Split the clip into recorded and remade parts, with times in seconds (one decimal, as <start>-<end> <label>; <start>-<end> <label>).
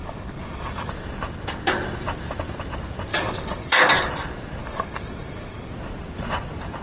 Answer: 0.0-0.9 remade; 0.9-3.1 recorded; 3.1-4.1 remade; 4.1-4.6 recorded; 4.6-5.7 remade; 5.7-6.8 recorded